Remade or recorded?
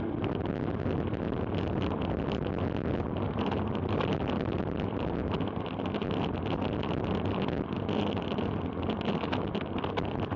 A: recorded